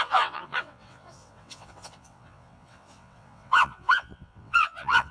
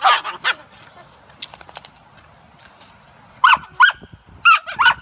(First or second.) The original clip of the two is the second